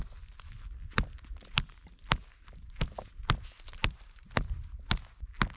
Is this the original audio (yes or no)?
yes